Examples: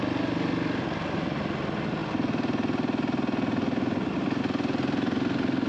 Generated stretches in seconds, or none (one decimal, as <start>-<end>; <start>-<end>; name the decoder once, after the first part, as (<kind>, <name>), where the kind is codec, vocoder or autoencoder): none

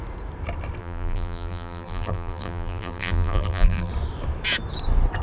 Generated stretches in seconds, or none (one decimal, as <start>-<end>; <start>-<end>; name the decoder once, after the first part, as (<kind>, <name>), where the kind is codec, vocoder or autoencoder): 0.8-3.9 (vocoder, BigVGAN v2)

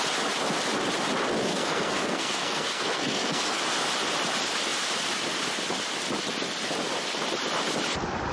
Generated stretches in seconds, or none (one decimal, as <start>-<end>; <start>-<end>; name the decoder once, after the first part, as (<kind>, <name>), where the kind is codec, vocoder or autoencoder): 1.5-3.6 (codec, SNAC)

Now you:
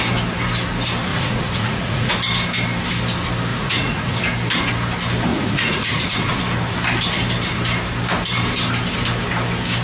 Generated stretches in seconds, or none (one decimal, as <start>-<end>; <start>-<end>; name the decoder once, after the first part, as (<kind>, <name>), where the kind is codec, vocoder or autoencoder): 1.1-2.1 (vocoder, Vocos); 3.5-4.2; 5.3-6.4

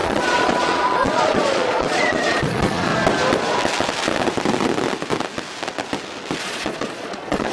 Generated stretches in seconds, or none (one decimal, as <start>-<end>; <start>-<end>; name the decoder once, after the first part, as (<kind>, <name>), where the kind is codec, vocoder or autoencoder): 0.0-2.9 (vocoder, Vocos); 6.4-7.5

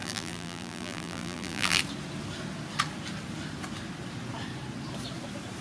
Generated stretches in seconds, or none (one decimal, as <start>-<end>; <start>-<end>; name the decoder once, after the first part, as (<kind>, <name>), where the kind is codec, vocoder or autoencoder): 0.0-1.8 (vocoder, BigVGAN v2)